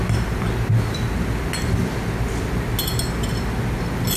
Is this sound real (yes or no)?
yes